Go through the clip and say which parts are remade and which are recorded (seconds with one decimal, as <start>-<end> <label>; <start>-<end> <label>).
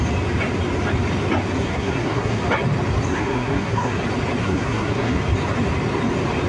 0.0-1.6 recorded; 1.6-2.4 remade; 2.4-3.1 recorded; 3.1-4.0 remade; 4.0-4.4 recorded; 4.4-5.2 remade; 5.2-6.5 recorded